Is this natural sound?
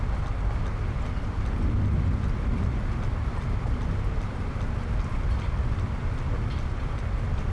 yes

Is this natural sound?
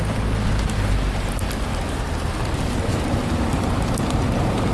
yes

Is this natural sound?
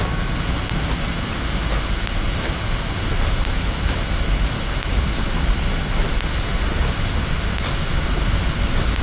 yes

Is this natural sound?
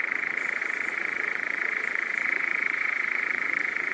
no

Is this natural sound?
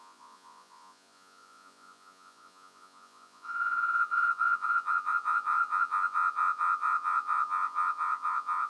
no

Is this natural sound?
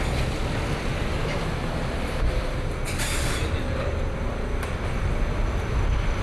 yes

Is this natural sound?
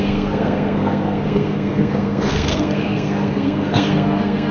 no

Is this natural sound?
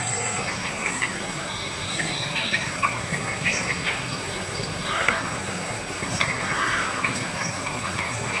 no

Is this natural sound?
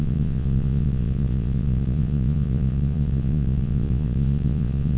no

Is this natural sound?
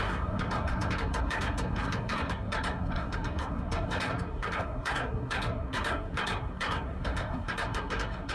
no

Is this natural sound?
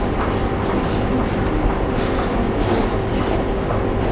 yes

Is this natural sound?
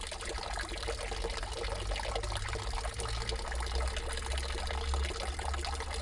yes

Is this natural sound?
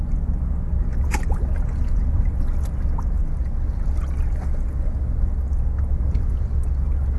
yes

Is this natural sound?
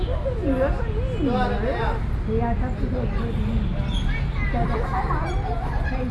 yes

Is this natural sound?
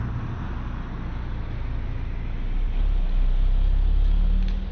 yes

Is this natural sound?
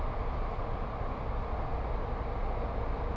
yes